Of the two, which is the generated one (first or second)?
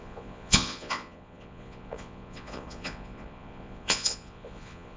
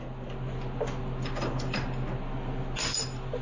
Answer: first